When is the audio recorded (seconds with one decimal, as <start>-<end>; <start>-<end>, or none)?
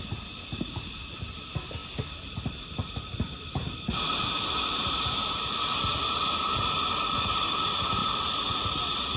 0.0-1.8; 5.9-9.2